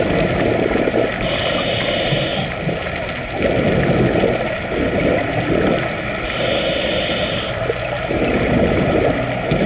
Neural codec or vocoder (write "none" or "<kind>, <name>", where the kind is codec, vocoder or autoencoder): none